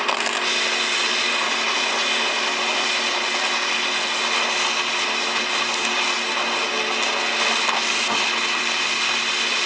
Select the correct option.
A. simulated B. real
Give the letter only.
B